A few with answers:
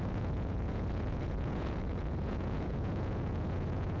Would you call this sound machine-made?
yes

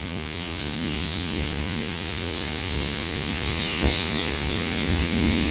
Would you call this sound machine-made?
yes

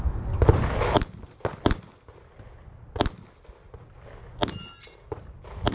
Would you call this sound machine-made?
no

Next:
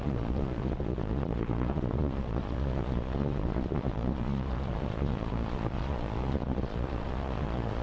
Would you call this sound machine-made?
yes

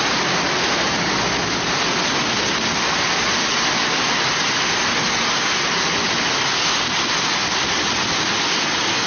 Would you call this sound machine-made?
no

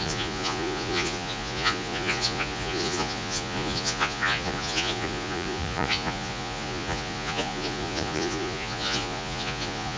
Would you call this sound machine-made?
yes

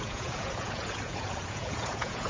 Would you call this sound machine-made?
yes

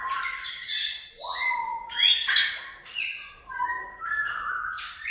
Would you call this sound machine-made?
yes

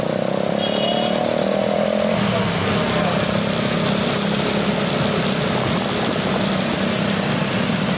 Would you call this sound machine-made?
no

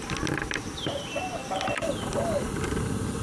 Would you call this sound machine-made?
no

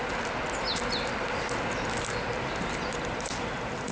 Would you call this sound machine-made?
no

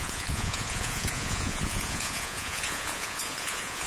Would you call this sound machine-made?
yes